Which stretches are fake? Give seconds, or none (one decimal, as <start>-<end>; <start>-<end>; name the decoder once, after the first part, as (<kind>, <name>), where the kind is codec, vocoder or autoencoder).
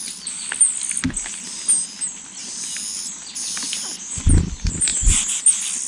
none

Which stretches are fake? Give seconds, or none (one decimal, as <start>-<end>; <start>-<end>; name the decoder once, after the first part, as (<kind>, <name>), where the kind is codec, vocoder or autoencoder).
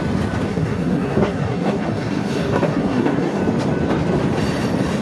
0.5-3.4 (codec, SNAC)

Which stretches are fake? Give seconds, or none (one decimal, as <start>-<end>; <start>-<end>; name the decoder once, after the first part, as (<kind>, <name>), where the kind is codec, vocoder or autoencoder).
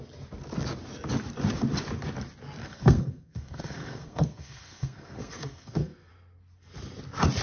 2.6-6.1 (codec, SNAC)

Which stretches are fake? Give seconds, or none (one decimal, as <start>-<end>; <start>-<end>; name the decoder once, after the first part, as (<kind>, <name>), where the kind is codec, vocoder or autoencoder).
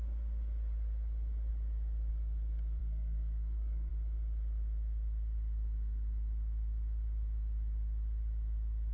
2.8-3.9 (codec, SNAC)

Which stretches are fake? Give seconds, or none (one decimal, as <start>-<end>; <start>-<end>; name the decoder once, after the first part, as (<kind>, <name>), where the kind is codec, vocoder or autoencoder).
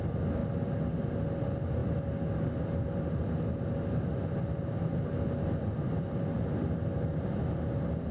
none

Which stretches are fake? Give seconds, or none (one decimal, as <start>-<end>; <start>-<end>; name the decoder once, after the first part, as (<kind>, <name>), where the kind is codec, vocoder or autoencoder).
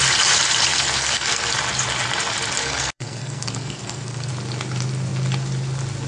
0.7-1.5 (codec, SNAC); 2.6-4.3